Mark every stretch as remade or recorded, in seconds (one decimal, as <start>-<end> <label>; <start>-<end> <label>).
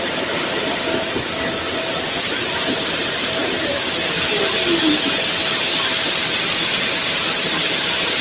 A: 0.0-8.2 recorded